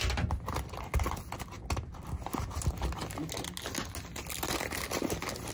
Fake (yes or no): no